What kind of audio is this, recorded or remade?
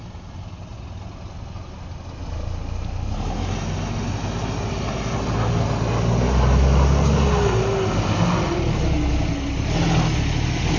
recorded